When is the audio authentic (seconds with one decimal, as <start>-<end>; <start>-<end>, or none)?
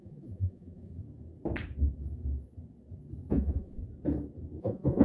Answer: 0.9-3.3; 3.8-4.6